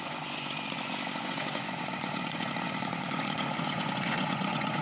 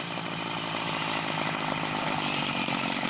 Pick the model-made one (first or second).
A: first